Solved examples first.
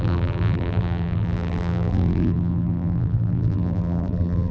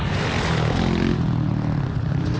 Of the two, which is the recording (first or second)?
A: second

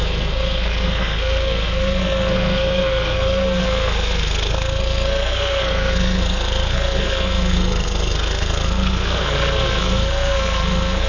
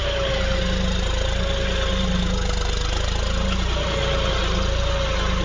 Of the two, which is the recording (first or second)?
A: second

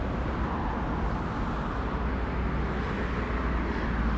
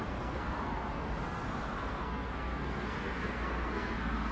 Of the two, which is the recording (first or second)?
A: first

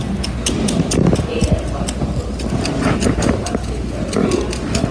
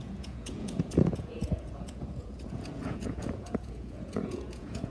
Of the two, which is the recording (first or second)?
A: first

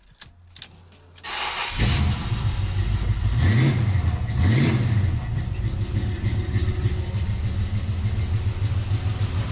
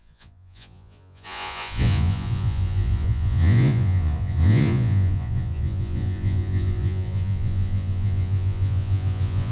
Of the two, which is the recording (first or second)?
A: first